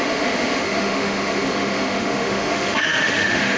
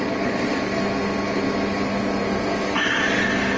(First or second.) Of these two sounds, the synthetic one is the first